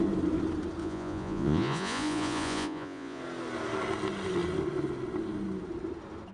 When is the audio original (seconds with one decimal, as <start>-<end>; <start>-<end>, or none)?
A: 0.0-0.8; 3.2-6.3